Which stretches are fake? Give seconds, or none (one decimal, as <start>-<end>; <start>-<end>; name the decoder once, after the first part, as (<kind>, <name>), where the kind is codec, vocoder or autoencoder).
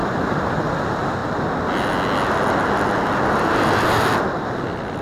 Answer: 0.0-0.6 (vocoder, BigVGAN v2)